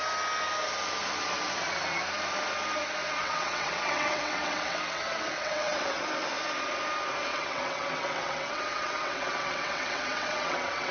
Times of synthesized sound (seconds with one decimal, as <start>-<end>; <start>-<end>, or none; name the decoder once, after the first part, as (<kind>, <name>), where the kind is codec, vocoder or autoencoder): 3.2-6.0 (vocoder, WaveNeXt); 7.3-10.9